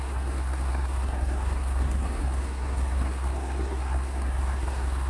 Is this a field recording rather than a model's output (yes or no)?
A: no